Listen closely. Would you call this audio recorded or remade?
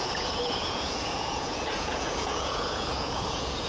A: remade